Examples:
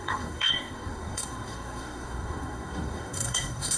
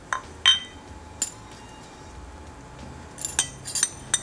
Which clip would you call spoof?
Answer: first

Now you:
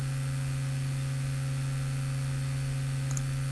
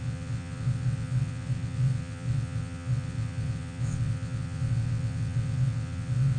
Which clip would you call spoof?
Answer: second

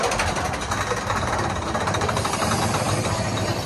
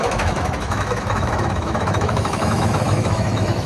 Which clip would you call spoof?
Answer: second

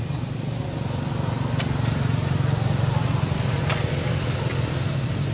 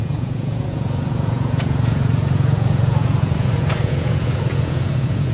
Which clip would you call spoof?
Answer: second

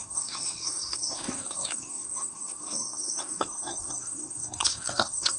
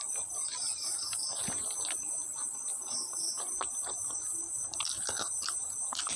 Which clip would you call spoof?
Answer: first